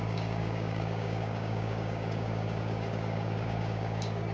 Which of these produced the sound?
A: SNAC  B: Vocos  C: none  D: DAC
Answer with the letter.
D